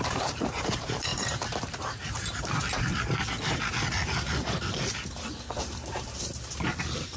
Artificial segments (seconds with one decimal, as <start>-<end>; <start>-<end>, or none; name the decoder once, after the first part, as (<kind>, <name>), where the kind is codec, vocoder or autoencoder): 0.0-2.9 (vocoder, BigVGAN v2); 5.6-7.2